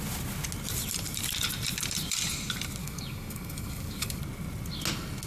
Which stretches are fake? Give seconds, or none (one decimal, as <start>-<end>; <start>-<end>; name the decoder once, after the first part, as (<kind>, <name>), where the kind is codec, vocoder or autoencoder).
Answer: 2.8-4.2 (codec, DAC)